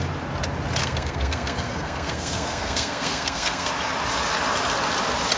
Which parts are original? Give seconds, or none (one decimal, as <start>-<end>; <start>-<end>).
0.0-0.8; 3.7-5.4